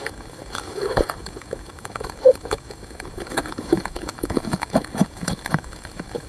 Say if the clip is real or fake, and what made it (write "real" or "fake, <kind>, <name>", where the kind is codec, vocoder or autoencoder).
fake, codec, DAC